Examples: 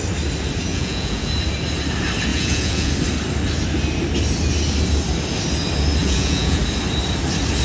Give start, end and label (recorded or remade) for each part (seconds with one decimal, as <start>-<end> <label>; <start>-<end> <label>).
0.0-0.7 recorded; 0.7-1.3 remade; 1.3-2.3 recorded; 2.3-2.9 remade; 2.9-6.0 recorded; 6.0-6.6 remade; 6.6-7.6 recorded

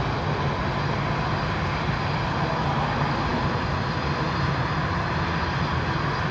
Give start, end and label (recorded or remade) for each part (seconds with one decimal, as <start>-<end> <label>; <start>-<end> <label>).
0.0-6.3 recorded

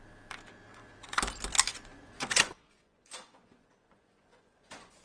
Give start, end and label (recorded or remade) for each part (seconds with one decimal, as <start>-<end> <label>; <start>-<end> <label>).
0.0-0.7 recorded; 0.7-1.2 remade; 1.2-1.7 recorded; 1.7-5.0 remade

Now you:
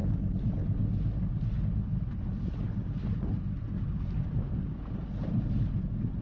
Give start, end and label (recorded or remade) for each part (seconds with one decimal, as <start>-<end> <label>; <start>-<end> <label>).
0.0-6.2 recorded

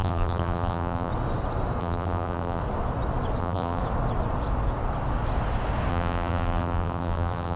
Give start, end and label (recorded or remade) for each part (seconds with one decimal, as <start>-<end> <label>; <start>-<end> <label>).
0.0-1.1 remade; 1.1-1.8 recorded; 1.8-2.6 remade; 2.6-3.4 recorded; 3.4-3.8 remade; 3.8-5.9 recorded; 5.9-7.6 remade